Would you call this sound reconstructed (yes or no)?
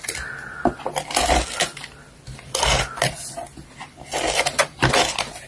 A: no